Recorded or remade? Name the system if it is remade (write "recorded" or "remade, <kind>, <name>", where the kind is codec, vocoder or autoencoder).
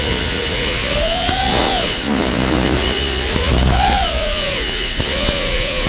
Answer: remade, vocoder, Vocos